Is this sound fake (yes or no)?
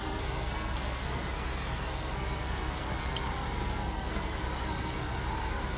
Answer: yes